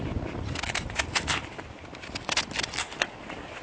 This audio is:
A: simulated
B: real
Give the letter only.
B